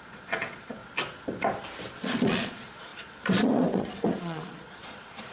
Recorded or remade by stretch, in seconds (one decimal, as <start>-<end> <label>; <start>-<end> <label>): 0.0-0.8 remade; 0.8-2.0 recorded; 2.0-5.3 remade